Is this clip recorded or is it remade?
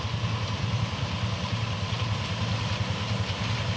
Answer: recorded